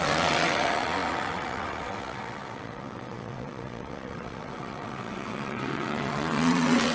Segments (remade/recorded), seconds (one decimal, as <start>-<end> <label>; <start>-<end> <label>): 0.0-6.9 remade